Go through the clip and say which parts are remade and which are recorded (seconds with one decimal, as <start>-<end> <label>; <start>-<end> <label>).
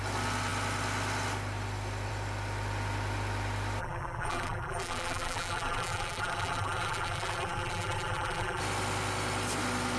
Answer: 0.0-3.8 recorded; 3.8-8.6 remade; 8.6-10.0 recorded